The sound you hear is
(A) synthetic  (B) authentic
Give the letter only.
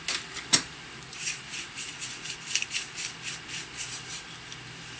B